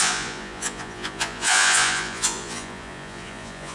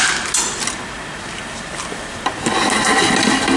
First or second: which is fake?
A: first